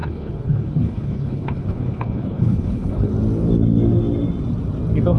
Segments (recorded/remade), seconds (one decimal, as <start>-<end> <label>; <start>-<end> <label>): 0.0-3.1 remade; 3.1-5.2 recorded